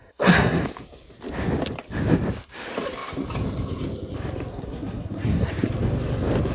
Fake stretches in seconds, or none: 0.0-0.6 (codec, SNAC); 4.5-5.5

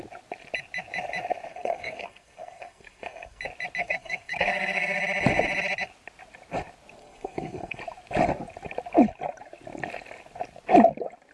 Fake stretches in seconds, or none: 1.5-3.4 (codec, SNAC); 3.8-5.0; 7.0-7.8

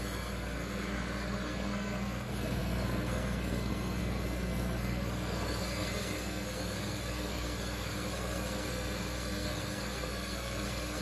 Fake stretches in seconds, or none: 0.0-11.0 (codec, SNAC)